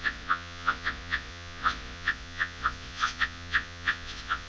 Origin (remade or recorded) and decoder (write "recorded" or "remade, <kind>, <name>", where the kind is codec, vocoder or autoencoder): remade, vocoder, Vocos